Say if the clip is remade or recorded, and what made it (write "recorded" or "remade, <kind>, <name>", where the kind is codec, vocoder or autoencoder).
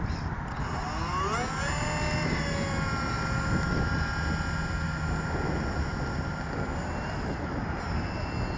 recorded